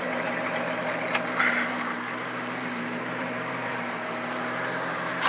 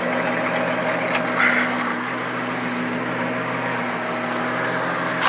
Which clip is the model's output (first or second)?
first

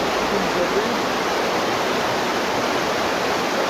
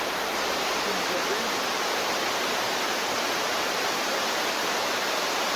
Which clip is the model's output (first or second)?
second